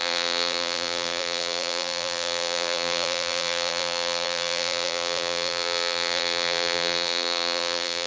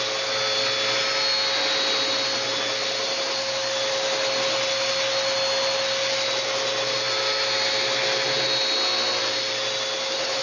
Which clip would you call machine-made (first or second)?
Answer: first